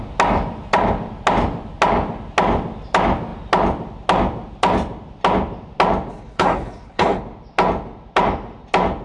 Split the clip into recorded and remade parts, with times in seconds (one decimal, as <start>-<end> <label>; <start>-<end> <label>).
0.0-6.1 recorded; 6.1-7.2 remade; 7.2-9.0 recorded